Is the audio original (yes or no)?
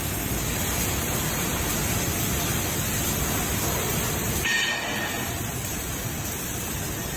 yes